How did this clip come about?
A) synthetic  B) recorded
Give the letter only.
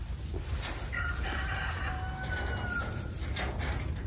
B